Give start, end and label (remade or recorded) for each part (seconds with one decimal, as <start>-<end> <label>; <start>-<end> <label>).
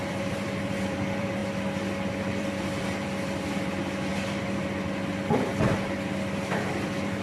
0.0-1.4 remade; 1.4-2.1 recorded; 2.1-4.1 remade; 4.1-6.5 recorded; 6.5-7.2 remade